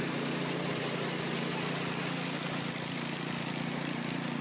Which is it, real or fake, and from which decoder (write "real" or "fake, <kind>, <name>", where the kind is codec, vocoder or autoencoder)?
real